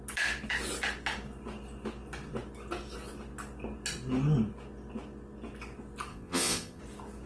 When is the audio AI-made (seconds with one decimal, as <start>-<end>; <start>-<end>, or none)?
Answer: 6.1-6.8